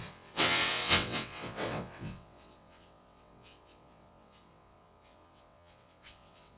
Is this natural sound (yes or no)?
no